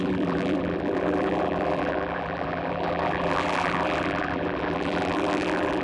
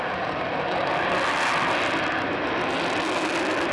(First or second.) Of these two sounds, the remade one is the first